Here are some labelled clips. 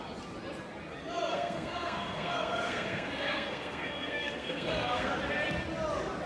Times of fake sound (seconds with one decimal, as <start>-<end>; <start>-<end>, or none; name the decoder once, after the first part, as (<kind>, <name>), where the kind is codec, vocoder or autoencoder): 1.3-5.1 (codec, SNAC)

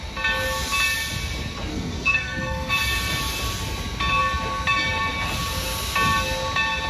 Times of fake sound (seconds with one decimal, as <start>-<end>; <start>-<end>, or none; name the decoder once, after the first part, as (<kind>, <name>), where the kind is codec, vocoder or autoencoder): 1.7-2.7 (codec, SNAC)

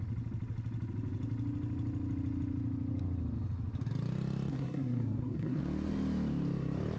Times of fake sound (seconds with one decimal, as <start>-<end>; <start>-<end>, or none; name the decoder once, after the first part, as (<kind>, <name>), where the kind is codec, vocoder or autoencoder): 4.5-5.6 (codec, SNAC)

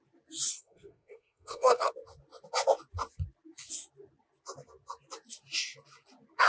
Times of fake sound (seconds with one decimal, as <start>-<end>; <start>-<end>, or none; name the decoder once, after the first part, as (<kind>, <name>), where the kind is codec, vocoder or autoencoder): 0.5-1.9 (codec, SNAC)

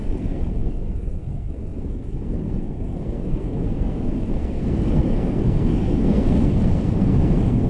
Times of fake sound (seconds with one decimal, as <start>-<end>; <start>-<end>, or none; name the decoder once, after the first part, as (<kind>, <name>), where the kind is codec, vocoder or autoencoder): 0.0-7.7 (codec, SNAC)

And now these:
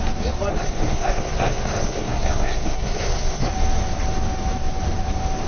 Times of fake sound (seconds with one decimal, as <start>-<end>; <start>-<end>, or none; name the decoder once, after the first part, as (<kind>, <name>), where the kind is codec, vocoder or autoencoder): 0.5-3.5 (codec, SNAC)